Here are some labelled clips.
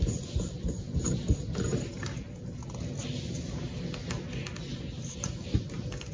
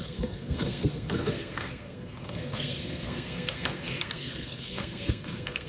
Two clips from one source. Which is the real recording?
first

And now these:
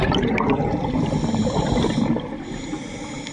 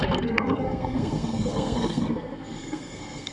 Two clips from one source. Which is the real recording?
first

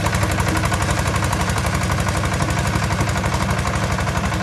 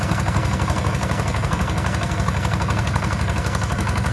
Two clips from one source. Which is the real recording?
first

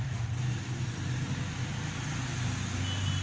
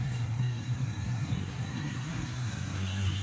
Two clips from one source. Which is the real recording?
first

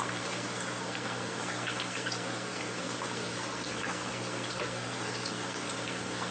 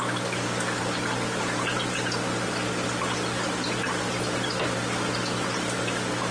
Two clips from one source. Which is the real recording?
second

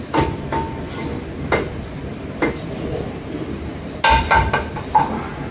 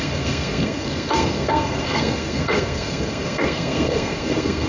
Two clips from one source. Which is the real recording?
first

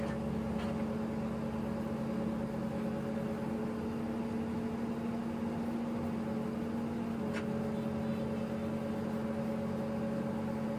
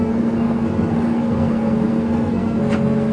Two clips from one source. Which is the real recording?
first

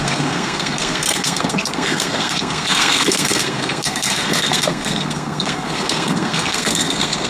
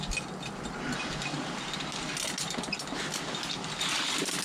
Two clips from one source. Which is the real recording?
second